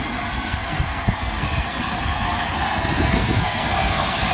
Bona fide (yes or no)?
no